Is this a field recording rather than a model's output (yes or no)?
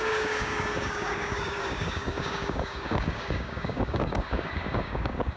no